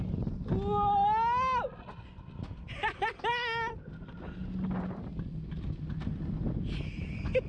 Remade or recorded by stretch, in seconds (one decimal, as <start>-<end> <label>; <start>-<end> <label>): 0.0-7.5 recorded